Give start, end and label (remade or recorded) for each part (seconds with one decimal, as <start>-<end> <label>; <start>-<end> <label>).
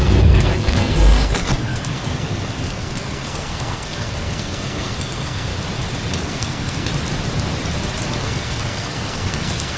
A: 0.0-5.5 remade; 5.5-6.1 recorded; 6.1-6.9 remade; 6.9-8.2 recorded; 8.2-9.8 remade